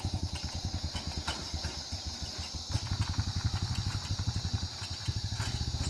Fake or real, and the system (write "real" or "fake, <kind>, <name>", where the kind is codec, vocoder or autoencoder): real